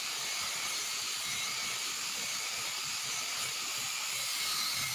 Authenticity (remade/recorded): recorded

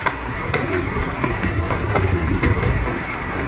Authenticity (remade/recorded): remade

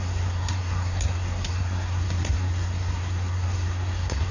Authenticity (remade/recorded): remade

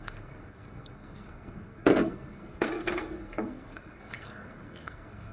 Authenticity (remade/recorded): remade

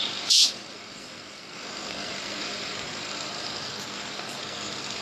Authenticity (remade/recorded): remade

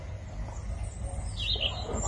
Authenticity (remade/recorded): recorded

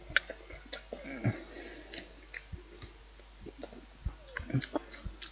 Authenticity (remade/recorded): recorded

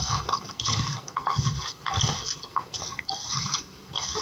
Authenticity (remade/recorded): remade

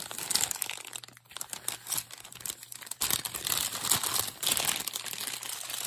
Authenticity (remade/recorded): recorded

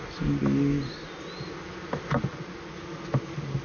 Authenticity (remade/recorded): recorded